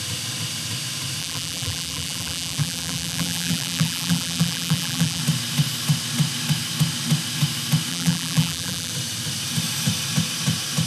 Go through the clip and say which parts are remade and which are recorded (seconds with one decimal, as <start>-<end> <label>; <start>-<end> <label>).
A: 0.0-1.2 recorded; 1.2-5.2 remade; 5.2-7.9 recorded; 7.9-8.9 remade; 8.9-10.9 recorded